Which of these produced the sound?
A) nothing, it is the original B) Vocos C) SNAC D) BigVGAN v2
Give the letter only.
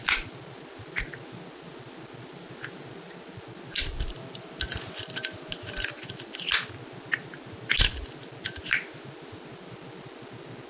A